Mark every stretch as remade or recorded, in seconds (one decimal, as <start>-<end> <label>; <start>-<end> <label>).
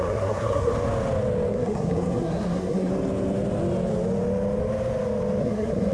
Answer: 0.0-0.7 remade; 0.7-1.5 recorded; 1.5-2.9 remade; 2.9-5.4 recorded; 5.4-5.9 remade